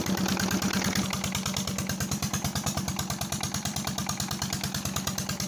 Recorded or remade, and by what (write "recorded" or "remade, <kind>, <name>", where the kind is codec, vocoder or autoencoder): recorded